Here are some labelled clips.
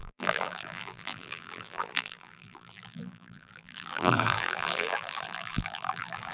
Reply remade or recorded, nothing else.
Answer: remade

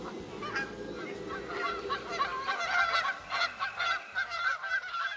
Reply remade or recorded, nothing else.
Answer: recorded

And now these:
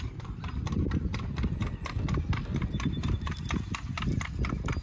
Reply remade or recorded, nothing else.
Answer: recorded